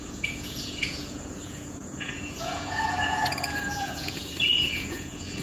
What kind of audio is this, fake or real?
fake